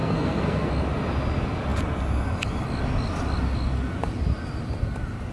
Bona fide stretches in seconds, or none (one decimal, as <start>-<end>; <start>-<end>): 0.7-5.3